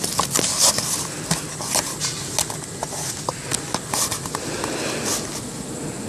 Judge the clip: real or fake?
real